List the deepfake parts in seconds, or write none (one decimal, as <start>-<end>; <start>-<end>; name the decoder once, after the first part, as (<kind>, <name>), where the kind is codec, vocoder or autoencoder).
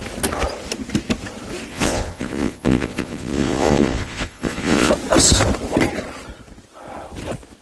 1.7-4.9 (vocoder, Vocos)